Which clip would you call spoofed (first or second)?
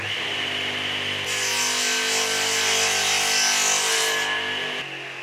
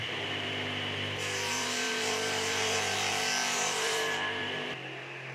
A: second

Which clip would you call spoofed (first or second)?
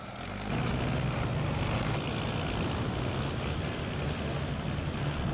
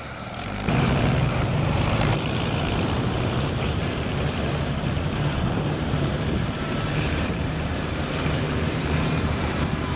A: second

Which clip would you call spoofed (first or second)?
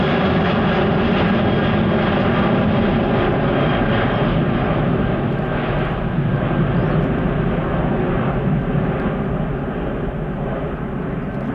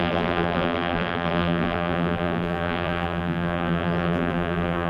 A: second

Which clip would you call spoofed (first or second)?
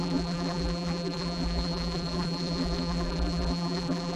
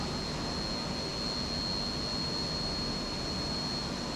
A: first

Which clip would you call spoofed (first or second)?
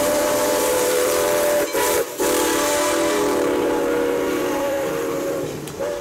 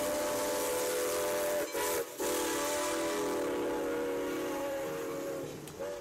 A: first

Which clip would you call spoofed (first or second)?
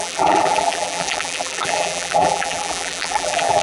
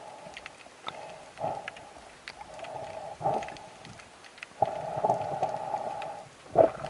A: first